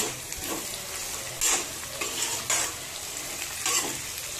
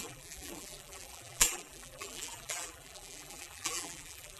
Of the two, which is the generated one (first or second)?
second